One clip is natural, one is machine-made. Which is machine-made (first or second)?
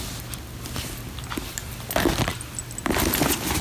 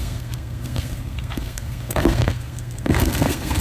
second